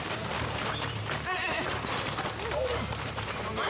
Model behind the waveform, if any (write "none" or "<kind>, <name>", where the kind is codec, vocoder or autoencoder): vocoder, BigVGAN v2